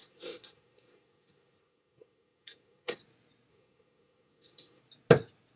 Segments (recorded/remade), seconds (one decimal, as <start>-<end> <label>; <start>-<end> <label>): 0.0-3.0 remade; 3.0-3.5 recorded; 3.5-4.8 remade; 4.8-5.6 recorded